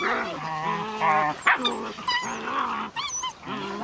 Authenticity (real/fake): real